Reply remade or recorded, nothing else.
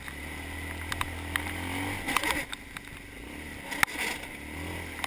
recorded